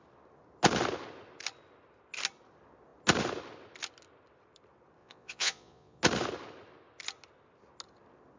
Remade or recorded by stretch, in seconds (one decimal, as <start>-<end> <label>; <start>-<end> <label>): 0.0-5.0 recorded; 5.0-6.0 remade; 6.0-8.4 recorded